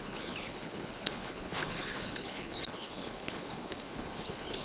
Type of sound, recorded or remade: remade